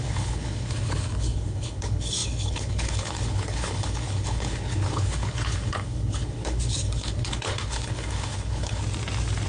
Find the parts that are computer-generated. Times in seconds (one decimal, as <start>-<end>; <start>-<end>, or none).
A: 0.0-8.8